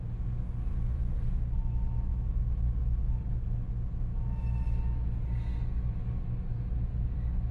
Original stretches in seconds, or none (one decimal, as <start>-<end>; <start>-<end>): 0.0-0.7; 1.3-7.5